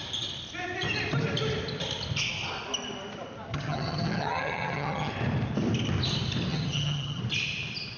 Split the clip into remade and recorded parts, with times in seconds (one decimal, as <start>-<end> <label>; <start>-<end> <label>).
0.0-3.5 recorded; 3.5-5.1 remade; 5.1-6.5 recorded; 6.5-7.2 remade; 7.2-8.0 recorded